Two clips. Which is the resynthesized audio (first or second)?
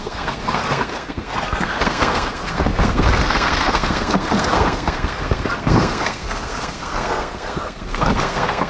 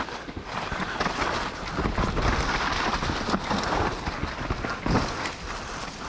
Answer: first